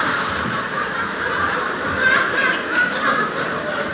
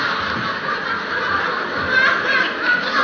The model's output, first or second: first